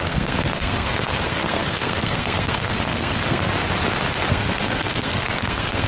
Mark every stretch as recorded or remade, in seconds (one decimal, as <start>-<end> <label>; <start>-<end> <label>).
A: 0.0-3.5 remade; 3.5-4.3 recorded; 4.3-5.9 remade